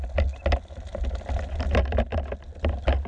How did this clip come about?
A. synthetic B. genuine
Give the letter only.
B